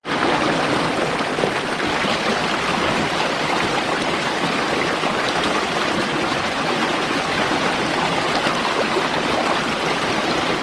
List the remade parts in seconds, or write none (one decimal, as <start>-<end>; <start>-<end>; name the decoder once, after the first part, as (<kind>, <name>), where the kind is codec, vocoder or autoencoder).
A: 6.1-7.6 (vocoder, Vocos)

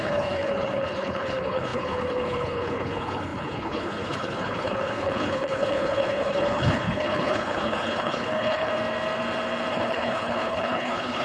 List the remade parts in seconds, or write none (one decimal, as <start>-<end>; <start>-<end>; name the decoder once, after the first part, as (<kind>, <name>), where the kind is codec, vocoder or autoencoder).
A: 0.0-8.7 (codec, HILCodec); 9.7-11.2

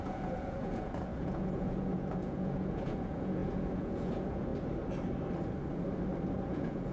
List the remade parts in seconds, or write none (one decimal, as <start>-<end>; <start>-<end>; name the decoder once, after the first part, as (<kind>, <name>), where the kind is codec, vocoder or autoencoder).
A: 0.0-4.5 (vocoder, Vocos); 6.5-6.9

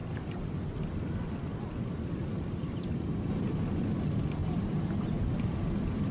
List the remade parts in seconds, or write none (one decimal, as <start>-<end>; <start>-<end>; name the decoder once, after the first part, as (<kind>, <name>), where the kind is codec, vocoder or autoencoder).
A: 2.2-3.4 (vocoder, BigVGAN v2); 4.4-5.0